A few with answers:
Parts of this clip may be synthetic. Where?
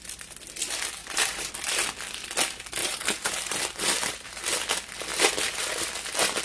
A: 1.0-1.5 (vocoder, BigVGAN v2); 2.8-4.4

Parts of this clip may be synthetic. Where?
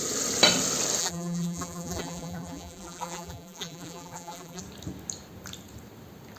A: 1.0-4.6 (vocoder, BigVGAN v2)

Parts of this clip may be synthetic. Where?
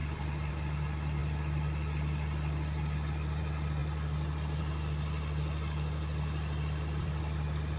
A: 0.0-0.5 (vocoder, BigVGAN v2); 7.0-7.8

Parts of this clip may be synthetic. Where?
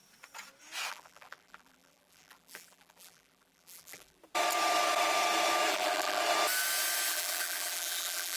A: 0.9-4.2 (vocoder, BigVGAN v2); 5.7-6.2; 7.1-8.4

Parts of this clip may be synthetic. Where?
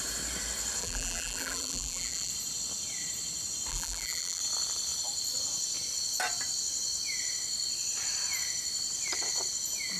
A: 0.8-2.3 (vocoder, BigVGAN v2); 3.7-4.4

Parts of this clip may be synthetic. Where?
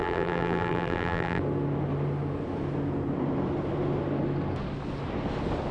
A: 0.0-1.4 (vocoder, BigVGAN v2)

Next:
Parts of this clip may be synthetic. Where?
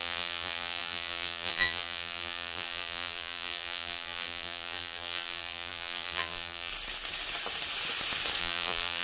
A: 0.0-6.7 (vocoder, BigVGAN v2); 8.4-9.0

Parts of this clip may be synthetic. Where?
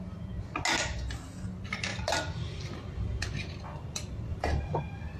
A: 1.9-4.8 (vocoder, BigVGAN v2)